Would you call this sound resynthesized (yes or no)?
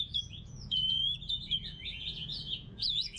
yes